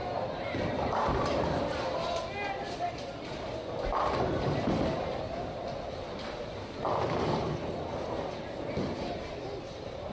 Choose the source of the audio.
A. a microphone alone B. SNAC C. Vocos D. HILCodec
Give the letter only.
A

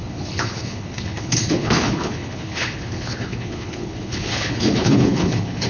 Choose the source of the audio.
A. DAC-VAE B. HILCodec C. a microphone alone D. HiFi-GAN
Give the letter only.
B